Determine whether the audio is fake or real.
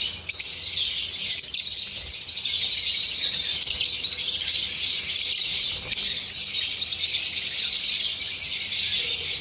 real